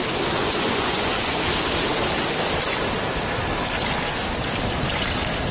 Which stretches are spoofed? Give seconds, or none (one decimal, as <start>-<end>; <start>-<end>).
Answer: 0.4-1.4